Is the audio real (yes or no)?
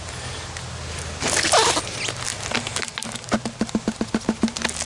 yes